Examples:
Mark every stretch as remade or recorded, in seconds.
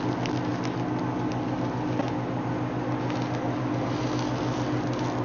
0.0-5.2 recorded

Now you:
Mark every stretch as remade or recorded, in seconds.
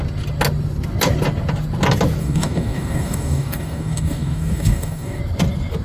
0.0-2.2 recorded; 2.2-5.2 remade; 5.2-5.8 recorded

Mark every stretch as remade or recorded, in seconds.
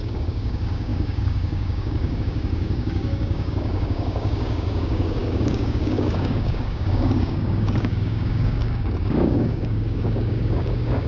0.0-11.1 remade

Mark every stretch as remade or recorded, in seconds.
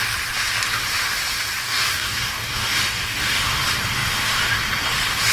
0.0-1.6 recorded; 1.6-3.4 remade; 3.4-5.3 recorded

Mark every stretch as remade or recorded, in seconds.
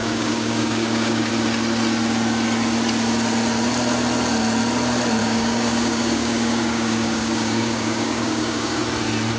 0.0-1.3 remade; 1.3-5.2 recorded; 5.2-8.8 remade; 8.8-9.4 recorded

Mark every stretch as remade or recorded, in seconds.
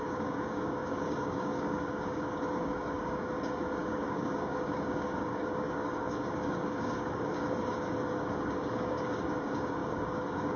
0.0-10.6 remade